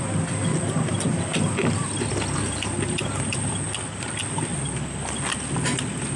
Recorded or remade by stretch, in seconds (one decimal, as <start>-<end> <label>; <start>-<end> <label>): 0.0-1.3 recorded; 1.3-3.5 remade; 3.5-4.5 recorded; 4.5-5.3 remade; 5.3-6.2 recorded